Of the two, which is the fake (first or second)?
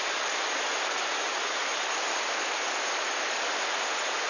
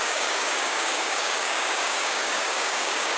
second